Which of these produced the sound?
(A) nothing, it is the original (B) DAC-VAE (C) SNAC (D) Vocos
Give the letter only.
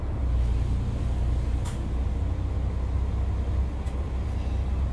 A